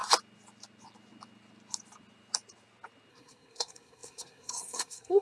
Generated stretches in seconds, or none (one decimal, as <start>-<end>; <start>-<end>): 3.1-5.2